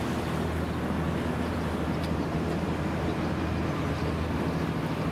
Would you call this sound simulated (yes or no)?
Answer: no